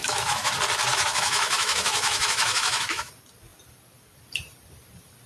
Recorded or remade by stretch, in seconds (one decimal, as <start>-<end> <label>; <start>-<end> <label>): 0.0-0.5 remade; 0.5-0.9 recorded; 0.9-3.1 remade; 3.1-5.3 recorded